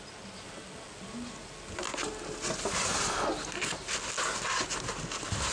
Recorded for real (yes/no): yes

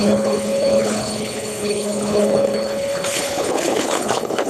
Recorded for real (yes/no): no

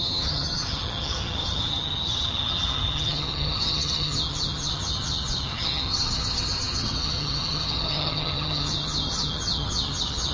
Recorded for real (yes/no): no